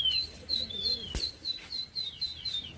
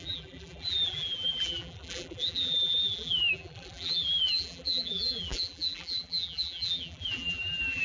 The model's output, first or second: second